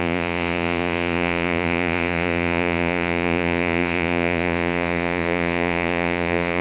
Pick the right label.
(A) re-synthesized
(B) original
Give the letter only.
A